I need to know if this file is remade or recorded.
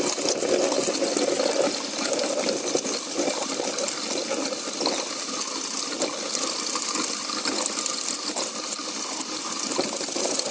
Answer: recorded